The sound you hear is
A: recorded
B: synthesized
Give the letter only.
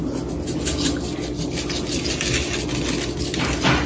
A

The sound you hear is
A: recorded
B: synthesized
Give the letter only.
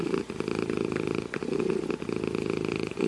A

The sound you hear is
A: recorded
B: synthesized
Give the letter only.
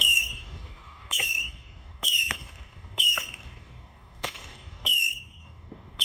B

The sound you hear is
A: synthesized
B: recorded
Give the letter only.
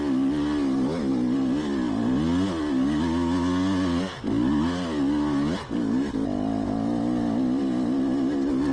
B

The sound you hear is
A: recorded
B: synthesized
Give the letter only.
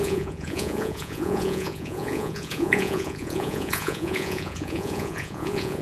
B